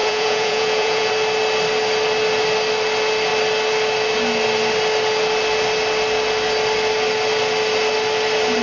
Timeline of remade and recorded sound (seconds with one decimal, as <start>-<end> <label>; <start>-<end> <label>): 0.0-1.1 remade; 1.1-8.6 recorded